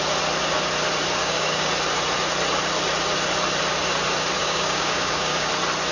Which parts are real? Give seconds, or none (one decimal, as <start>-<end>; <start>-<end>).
0.0-1.2; 1.7-4.4; 5.5-5.9